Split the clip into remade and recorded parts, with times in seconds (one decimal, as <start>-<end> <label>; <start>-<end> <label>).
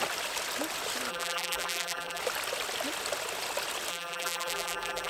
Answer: 0.0-1.1 recorded; 1.1-2.2 remade; 2.2-3.9 recorded; 3.9-5.1 remade